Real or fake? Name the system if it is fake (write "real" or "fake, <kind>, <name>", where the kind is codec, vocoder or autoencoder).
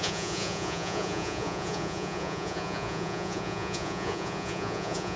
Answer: fake, vocoder, Vocos